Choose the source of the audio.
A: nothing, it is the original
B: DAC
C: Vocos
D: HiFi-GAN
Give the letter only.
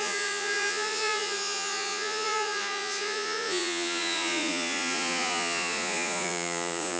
C